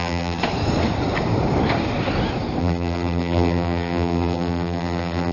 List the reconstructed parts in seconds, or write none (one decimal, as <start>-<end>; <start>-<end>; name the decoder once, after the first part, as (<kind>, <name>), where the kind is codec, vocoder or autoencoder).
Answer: 0.0-0.4 (vocoder, BigVGAN v2); 2.6-5.3